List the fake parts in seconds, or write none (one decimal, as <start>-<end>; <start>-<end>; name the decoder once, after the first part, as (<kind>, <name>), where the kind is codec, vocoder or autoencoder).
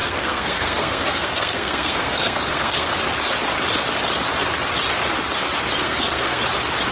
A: 0.0-2.9 (codec, SNAC); 5.8-6.4